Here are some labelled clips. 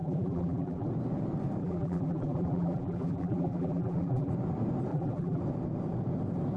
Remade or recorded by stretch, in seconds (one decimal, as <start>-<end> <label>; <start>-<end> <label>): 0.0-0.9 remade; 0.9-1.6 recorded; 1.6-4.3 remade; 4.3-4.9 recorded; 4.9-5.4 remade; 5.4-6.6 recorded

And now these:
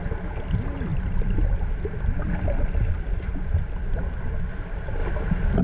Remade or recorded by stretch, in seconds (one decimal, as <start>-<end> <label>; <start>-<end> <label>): 0.0-0.9 recorded; 0.9-2.3 remade; 2.3-3.3 recorded; 3.3-4.5 remade; 4.5-5.6 recorded

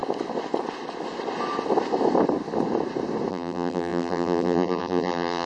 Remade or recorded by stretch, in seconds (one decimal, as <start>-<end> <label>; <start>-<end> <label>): 0.0-3.3 recorded; 3.3-5.5 remade